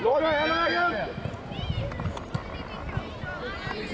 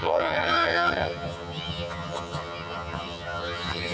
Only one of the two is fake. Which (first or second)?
second